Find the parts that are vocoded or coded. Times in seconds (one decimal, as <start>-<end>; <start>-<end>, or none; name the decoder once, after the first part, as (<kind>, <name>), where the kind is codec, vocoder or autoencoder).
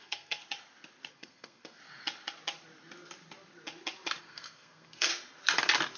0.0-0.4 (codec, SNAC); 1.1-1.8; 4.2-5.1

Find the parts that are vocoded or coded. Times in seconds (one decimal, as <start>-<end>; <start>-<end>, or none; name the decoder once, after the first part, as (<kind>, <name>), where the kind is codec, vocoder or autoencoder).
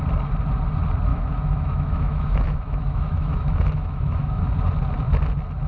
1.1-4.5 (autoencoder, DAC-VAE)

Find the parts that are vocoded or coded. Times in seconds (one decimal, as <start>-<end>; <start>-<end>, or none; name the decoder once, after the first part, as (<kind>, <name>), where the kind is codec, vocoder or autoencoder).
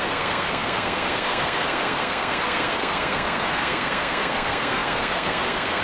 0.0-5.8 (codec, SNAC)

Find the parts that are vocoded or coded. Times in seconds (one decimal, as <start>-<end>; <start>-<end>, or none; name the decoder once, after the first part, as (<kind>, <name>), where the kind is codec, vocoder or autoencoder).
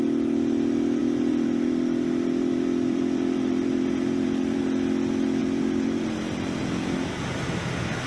1.0-4.6 (vocoder, BigVGAN v2); 5.4-6.6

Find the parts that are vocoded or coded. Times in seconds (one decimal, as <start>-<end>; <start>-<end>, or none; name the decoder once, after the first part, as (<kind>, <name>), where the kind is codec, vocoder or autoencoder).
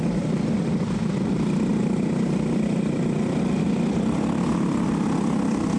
none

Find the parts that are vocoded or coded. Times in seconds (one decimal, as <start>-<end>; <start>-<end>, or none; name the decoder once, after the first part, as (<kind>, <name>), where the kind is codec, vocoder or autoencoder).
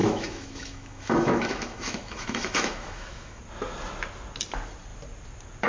0.0-3.4 (autoencoder, DAC-VAE)